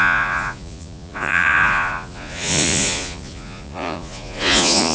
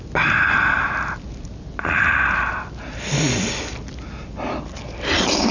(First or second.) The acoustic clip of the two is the second